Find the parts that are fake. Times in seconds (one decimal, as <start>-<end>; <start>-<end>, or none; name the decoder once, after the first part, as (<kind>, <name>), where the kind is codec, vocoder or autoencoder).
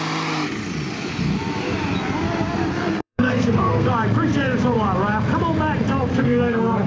2.7-3.9 (codec, SNAC); 6.1-6.9